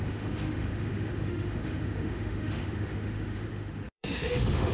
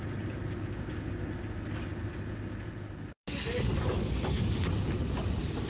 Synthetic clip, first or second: first